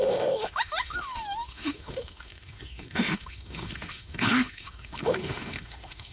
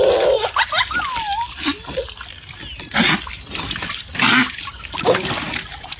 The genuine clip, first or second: second